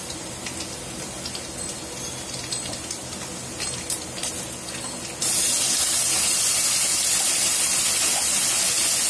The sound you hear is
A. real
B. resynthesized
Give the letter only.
A